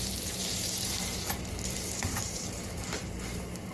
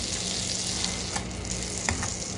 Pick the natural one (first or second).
second